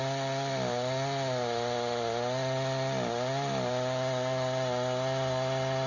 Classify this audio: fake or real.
real